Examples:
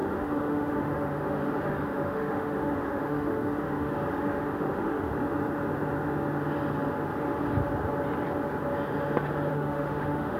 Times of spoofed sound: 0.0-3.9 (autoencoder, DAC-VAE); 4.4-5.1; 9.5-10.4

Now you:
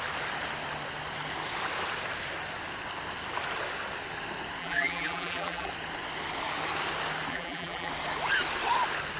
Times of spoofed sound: 4.6-5.7 (vocoder, BigVGAN v2); 7.3-7.9

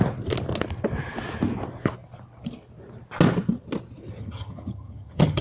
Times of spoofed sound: 4.2-5.4 (vocoder, HiFi-GAN)

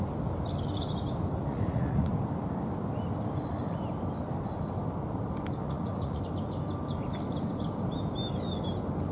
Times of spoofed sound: 1.5-2.1 (vocoder, Vocos); 5.6-6.2

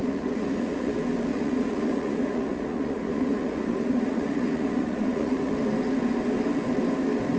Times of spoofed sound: 0.0-0.9 (vocoder, Vocos); 1.3-5.5

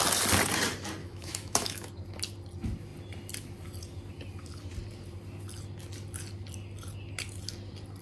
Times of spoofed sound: 1.0-1.9 (autoencoder, DAC-VAE)